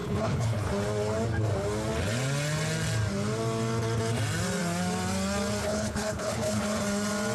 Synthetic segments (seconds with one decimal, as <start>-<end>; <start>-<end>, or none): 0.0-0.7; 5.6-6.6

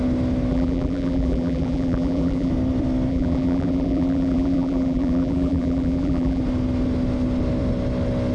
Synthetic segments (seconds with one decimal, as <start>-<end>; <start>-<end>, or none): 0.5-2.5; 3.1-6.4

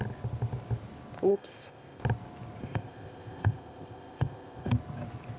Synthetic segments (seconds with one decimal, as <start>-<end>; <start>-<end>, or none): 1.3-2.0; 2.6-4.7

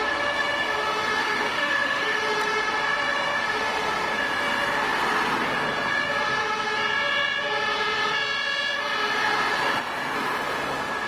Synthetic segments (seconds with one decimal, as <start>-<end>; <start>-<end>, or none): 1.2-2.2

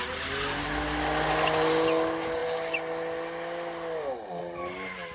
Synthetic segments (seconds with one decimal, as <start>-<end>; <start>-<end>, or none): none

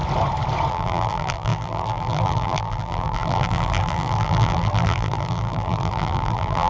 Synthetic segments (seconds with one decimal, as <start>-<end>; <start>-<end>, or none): 0.7-6.7

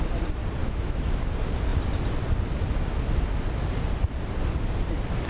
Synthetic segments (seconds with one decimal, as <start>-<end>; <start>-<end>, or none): 0.6-1.2